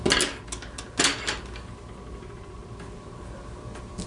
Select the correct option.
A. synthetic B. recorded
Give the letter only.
B